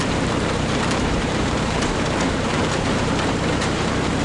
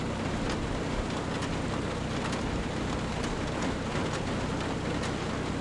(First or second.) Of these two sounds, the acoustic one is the second